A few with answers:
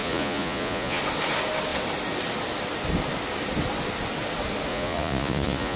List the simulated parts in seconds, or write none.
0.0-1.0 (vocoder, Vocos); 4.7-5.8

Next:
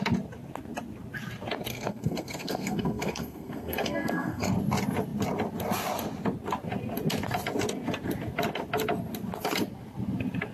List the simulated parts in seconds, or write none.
1.7-4.5 (codec, SNAC)

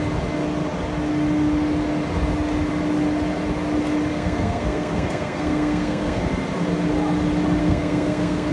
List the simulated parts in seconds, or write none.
4.1-6.3 (codec, SNAC); 7.6-8.5

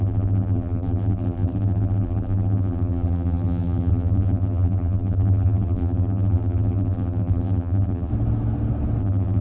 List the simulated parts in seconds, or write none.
0.0-8.1 (vocoder, BigVGAN v2); 9.0-9.4

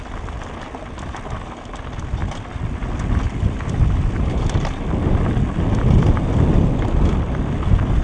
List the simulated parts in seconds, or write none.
none

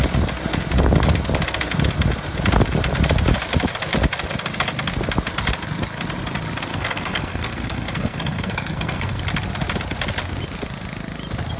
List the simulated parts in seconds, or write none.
6.7-9.2 (codec, SNAC)

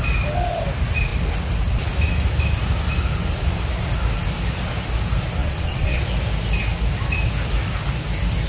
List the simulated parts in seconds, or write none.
5.4-6.0 (vocoder, WaveNeXt)

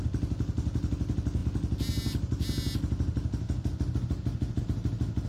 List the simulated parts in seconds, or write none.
none